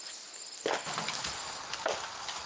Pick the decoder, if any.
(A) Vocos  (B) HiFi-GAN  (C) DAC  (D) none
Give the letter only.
D